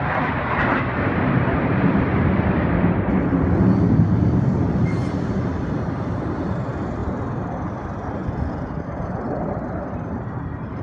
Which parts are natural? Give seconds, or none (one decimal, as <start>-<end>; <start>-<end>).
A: 2.1-4.1; 7.0-9.4